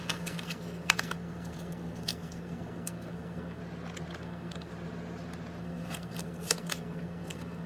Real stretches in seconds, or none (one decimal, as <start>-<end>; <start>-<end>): 3.6-4.2; 4.7-5.6